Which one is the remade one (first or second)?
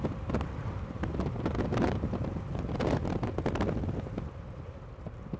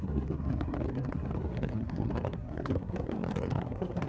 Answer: second